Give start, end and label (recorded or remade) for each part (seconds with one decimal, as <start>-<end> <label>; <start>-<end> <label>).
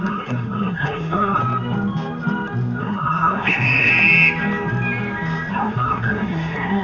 0.0-1.4 remade; 1.4-2.8 recorded; 2.8-3.9 remade; 3.9-5.5 recorded; 5.5-6.8 remade